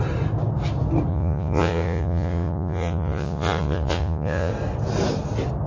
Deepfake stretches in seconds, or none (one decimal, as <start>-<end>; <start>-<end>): 1.1-4.5